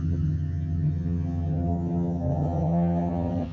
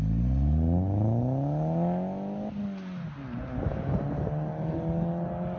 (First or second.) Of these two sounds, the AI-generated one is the first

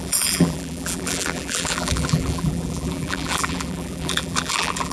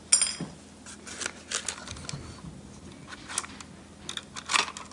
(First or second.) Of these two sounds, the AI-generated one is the first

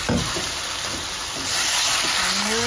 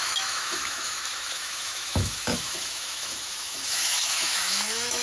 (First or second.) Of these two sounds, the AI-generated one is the second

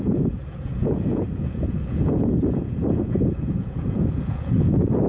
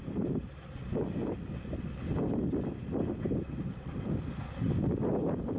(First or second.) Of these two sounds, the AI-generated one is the first